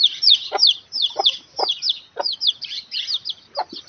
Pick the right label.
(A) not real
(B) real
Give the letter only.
B